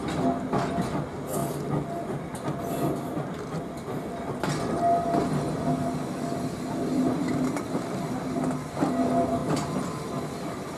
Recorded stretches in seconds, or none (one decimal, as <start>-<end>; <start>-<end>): 0.0-10.8